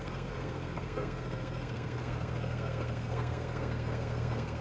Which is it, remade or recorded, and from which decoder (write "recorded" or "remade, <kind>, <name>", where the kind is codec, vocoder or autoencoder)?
remade, codec, SNAC